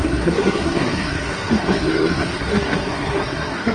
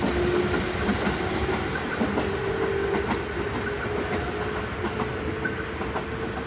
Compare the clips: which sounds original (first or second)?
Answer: second